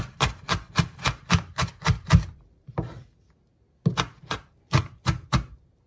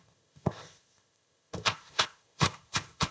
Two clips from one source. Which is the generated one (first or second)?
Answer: second